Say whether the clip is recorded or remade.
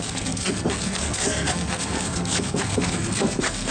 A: remade